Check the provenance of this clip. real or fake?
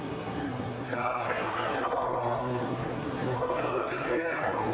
fake